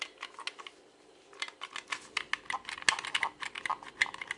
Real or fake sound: real